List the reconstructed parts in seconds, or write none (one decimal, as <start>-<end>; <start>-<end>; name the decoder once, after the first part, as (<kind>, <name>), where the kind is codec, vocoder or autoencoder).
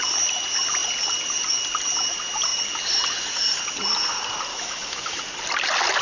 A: 4.5-5.2 (autoencoder, DAC-VAE)